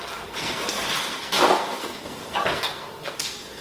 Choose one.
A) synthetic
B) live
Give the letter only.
A